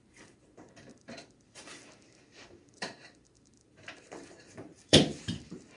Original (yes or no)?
no